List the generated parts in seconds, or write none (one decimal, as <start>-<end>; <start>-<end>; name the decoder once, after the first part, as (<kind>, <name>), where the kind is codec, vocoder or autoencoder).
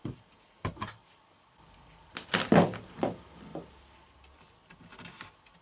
none